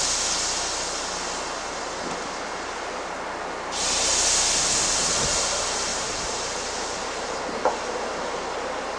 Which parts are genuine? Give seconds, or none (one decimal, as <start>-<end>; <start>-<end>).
0.0-5.9; 7.0-9.0